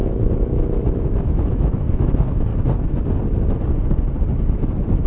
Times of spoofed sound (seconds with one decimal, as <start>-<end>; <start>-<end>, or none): 0.0-2.5